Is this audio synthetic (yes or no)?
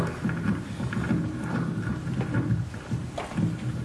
no